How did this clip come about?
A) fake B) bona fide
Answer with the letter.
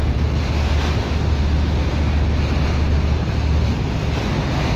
B